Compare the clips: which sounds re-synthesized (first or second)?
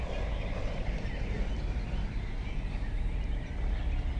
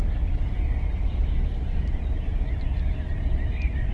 second